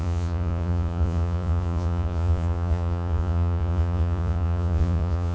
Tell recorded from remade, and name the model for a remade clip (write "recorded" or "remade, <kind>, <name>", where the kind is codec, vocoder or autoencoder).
remade, vocoder, Vocos